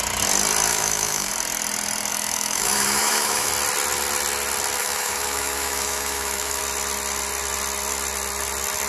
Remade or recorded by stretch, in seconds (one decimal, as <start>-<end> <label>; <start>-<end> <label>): 0.0-0.7 recorded; 0.7-1.3 remade; 1.3-2.1 recorded; 2.1-3.5 remade; 3.5-4.8 recorded; 4.8-6.6 remade; 6.6-8.9 recorded